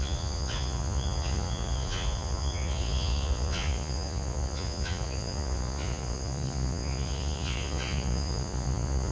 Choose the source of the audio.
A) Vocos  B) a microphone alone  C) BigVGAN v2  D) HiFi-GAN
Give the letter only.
A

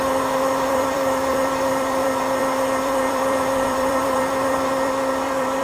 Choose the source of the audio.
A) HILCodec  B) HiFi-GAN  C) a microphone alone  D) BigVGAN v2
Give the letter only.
D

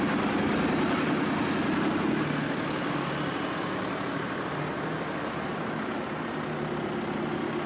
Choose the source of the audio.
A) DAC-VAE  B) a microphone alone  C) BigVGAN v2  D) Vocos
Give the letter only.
B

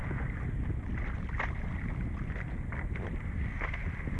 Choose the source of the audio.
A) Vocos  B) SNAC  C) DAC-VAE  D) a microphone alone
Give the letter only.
D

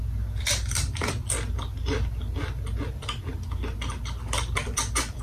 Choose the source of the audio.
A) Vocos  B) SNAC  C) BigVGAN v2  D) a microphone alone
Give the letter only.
D